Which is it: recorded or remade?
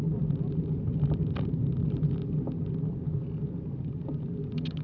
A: recorded